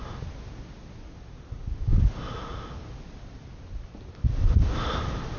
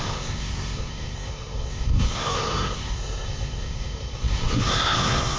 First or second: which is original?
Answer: first